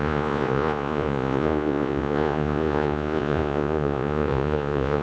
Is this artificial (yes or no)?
yes